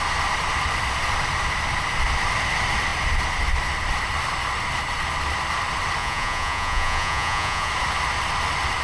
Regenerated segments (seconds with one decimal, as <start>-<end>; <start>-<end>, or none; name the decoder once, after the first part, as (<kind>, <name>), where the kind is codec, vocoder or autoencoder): 6.0-7.7 (vocoder, Vocos)